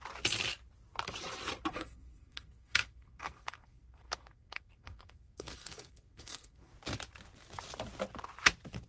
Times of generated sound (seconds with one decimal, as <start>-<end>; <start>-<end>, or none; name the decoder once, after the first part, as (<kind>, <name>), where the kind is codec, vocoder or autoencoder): 1.7-6.7 (codec, SNAC)